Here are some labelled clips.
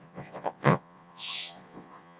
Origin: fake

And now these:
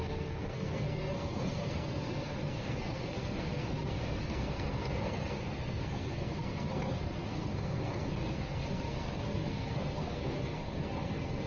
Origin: fake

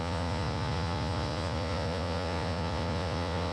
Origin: fake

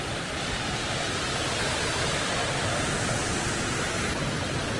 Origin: fake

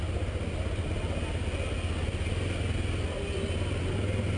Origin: real